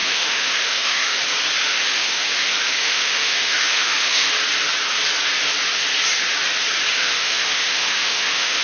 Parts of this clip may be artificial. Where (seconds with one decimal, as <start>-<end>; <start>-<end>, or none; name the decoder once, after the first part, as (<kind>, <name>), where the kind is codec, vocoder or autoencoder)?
0.0-1.2 (autoencoder, DAC-VAE); 1.6-4.3; 7.0-8.6